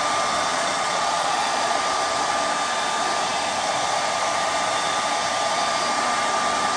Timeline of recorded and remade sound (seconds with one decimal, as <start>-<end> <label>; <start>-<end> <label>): 0.0-0.5 recorded; 0.5-1.8 remade; 1.8-6.8 recorded